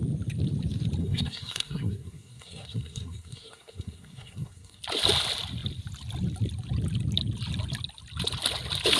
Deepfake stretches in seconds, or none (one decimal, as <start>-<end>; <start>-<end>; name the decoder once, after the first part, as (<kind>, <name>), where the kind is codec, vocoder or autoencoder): 1.0-4.8 (codec, SNAC)